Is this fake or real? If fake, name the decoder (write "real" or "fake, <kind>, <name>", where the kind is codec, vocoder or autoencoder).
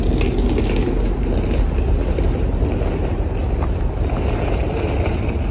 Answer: real